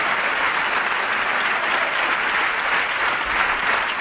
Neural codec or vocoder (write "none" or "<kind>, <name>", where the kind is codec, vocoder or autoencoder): none